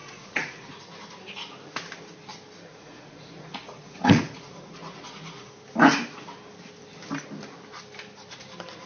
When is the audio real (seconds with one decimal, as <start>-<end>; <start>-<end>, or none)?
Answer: 0.7-2.7; 5.5-8.9